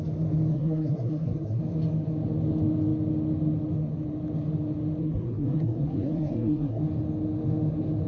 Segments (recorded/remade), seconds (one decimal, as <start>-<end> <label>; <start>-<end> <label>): 0.0-0.5 recorded; 0.5-1.6 remade; 1.6-5.0 recorded; 5.0-6.8 remade; 6.8-8.1 recorded